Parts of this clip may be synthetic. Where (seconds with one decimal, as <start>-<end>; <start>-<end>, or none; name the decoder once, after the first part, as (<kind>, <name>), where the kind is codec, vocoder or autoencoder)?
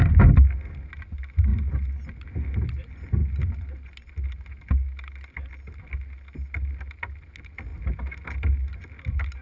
none